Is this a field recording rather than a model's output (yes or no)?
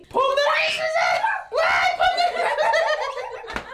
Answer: yes